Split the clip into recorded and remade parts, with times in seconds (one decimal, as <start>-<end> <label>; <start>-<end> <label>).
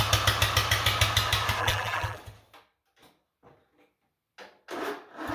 0.0-1.6 recorded; 1.6-2.2 remade; 2.2-5.3 recorded